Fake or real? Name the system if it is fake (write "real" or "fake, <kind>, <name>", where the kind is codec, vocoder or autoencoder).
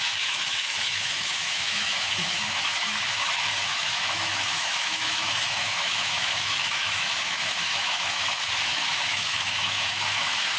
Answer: fake, autoencoder, DAC-VAE